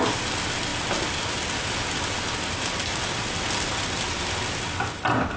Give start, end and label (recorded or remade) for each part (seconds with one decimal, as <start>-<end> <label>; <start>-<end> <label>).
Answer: 0.0-5.4 recorded